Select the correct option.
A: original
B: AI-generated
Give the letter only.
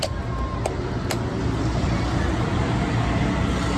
A